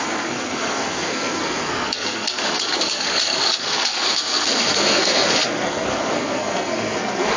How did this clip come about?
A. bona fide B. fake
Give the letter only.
B